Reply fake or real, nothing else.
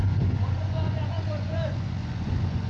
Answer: fake